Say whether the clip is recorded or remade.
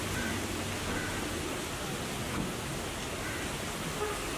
recorded